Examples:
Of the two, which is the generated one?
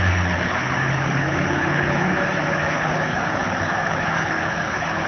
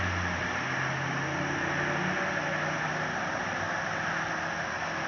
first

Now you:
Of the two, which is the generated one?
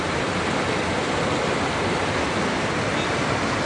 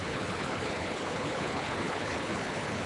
second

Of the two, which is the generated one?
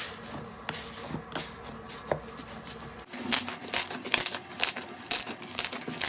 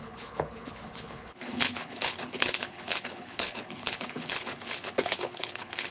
second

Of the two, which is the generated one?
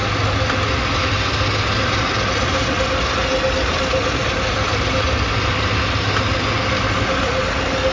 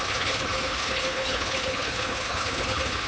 second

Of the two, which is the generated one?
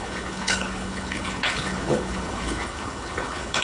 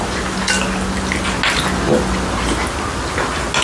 first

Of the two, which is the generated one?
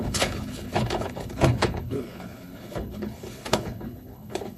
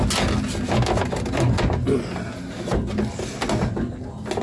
first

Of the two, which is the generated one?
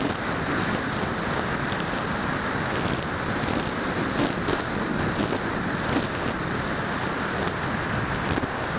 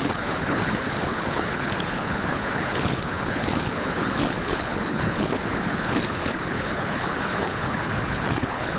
second